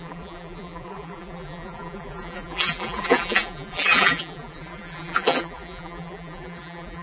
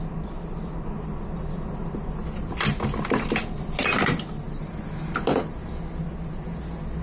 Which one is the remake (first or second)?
first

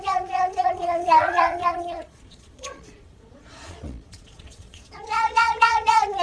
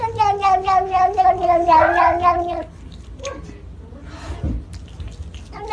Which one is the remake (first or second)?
first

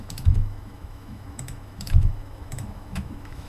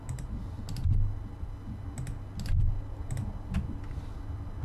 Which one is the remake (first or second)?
first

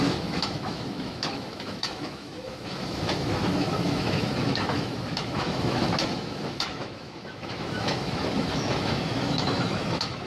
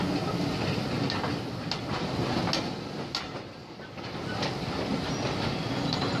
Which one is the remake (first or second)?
first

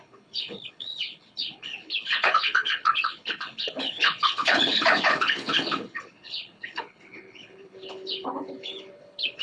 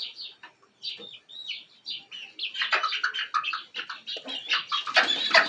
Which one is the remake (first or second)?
first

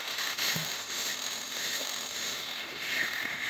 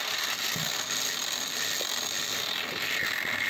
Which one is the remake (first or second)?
first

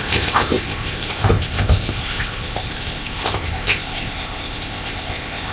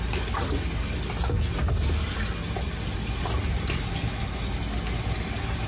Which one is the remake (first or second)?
first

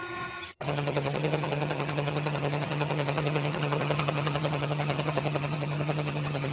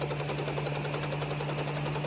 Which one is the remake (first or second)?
first